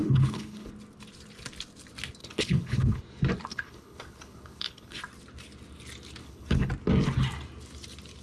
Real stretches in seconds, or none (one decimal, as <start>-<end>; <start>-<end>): 0.7-2.2; 3.0-3.5; 5.0-6.2; 6.7-8.2